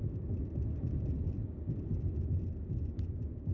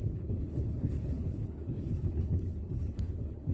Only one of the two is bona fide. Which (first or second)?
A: first